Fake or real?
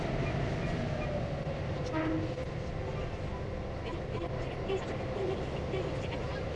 real